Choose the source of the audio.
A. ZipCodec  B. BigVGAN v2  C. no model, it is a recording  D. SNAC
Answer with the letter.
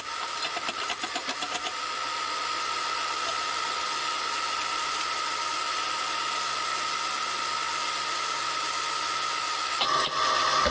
C